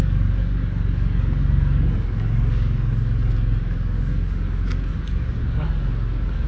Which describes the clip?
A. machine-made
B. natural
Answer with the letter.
A